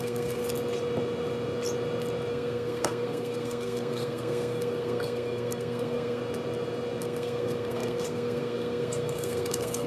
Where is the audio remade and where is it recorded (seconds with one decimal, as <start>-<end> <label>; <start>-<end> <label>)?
0.0-0.4 remade; 0.4-2.3 recorded; 2.3-6.2 remade; 6.2-7.0 recorded; 7.0-9.9 remade